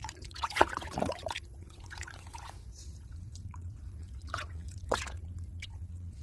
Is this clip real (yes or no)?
no